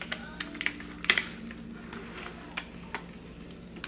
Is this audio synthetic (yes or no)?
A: no